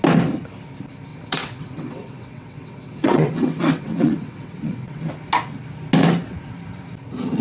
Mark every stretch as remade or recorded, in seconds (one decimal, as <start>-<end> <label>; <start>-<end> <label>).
0.0-1.1 recorded; 1.1-5.1 remade; 5.1-7.4 recorded